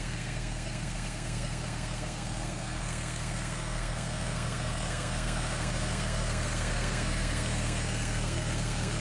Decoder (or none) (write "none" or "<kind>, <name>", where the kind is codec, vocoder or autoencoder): codec, SNAC